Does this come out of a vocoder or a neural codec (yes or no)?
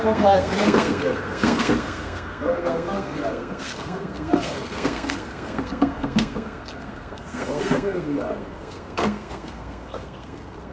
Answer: yes